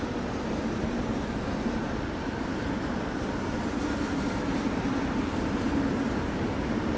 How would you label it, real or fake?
real